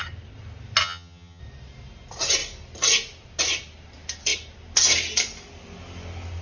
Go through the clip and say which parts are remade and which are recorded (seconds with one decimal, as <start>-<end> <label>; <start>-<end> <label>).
0.0-0.8 recorded; 0.8-1.4 remade; 1.4-6.4 recorded